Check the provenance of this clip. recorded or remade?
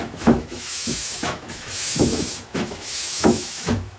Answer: remade